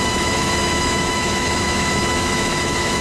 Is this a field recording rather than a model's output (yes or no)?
no